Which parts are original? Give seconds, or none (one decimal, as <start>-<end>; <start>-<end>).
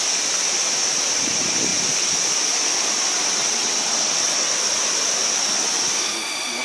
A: 0.0-3.4; 4.5-6.6